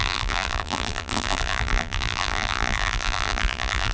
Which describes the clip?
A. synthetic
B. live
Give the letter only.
A